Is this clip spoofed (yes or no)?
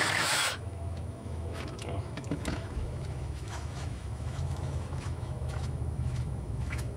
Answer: yes